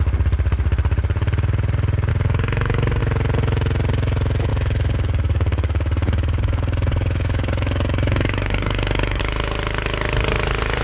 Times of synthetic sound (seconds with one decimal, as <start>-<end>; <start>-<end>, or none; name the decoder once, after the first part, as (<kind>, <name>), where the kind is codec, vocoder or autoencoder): 2.1-3.0 (codec, DAC); 4.5-9.2